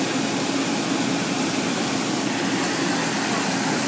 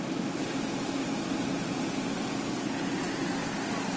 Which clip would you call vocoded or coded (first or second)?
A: first